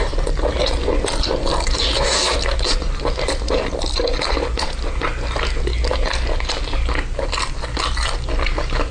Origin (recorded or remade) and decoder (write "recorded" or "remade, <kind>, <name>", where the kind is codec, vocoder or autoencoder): recorded